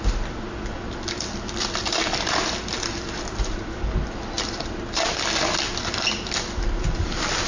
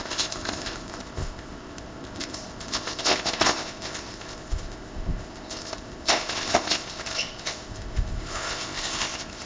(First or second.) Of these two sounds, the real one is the first